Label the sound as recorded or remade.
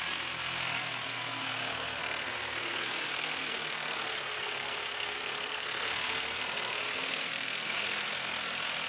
remade